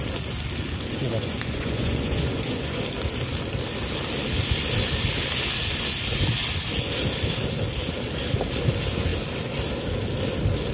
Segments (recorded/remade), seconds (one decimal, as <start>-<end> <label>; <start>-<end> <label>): 0.0-1.2 recorded; 1.2-2.8 remade; 2.8-10.7 recorded